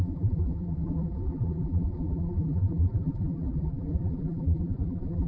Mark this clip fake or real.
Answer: fake